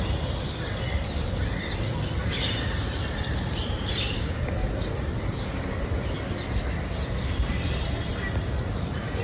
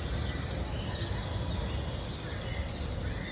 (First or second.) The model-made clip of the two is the first